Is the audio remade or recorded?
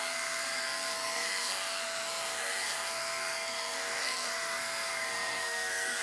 remade